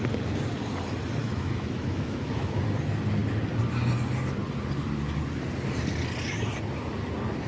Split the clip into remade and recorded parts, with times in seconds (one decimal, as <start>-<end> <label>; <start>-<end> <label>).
0.0-1.2 recorded; 1.2-2.6 remade; 2.6-7.5 recorded